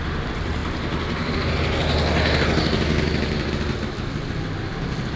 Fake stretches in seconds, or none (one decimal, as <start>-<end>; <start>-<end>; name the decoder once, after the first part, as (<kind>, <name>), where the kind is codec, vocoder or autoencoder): none